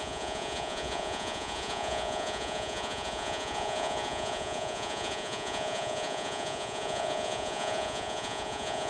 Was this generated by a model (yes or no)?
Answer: yes